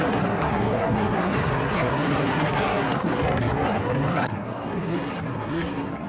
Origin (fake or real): fake